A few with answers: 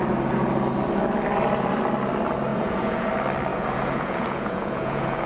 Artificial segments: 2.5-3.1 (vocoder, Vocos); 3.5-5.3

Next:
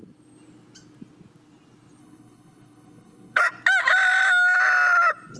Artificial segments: 2.0-3.4 (codec, HILCodec)

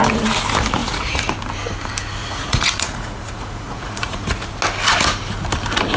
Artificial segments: 0.8-1.3 (vocoder, Vocos); 2.2-4.5

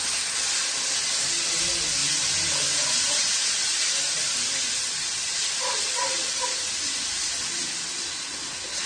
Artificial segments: 2.0-2.5 (vocoder, BigVGAN v2); 3.7-7.9

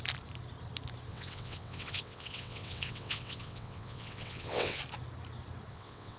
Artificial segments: 1.1-4.8 (vocoder, WaveNeXt); 5.7-6.2